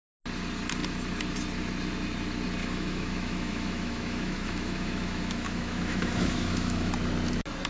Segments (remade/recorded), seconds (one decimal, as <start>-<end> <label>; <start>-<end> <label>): 0.0-2.6 recorded; 2.6-6.9 remade; 6.9-7.7 recorded

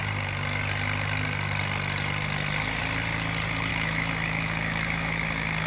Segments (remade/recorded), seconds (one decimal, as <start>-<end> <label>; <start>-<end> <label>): 0.0-3.7 recorded; 3.7-5.7 remade

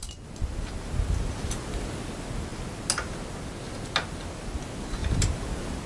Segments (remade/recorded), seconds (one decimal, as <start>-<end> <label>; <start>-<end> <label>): 0.0-5.9 recorded

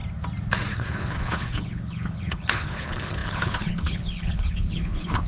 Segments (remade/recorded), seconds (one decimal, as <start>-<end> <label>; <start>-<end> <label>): 0.0-0.7 recorded; 0.7-5.3 remade

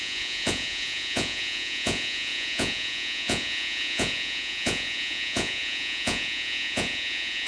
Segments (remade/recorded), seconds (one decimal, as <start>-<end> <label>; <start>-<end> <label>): 0.0-7.5 remade

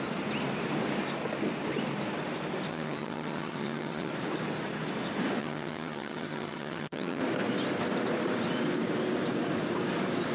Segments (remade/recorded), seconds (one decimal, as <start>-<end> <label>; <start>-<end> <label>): 0.0-2.7 recorded; 2.7-4.1 remade; 4.1-5.4 recorded; 5.4-7.2 remade; 7.2-10.3 recorded